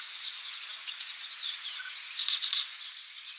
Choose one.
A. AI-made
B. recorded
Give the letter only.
A